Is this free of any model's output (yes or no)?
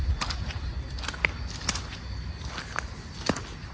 yes